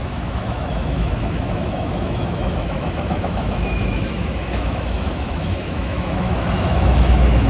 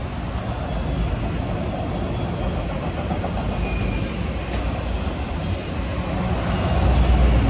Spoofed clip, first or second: first